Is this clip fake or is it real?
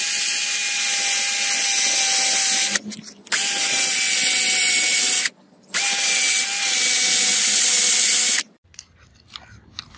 real